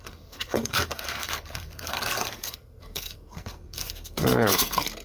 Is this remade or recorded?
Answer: remade